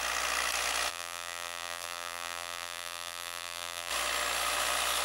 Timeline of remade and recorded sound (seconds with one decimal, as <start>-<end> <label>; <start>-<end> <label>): 0.0-0.9 recorded; 0.9-3.9 remade; 3.9-5.0 recorded